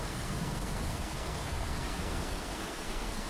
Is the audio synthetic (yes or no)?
yes